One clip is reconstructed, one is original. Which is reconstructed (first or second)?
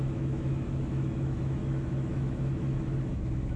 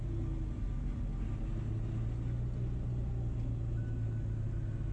first